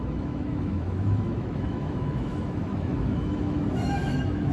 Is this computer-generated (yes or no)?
yes